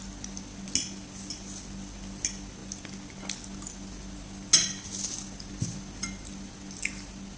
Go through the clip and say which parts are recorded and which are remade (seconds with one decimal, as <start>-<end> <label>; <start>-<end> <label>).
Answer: 0.0-7.4 recorded